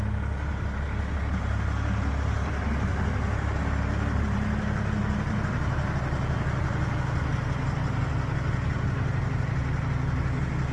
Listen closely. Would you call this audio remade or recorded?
recorded